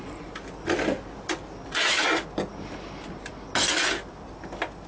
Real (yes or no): yes